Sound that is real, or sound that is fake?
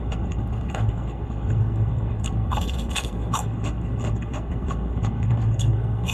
fake